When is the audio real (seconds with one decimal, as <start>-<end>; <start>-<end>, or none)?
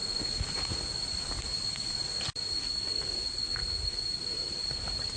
0.0-5.2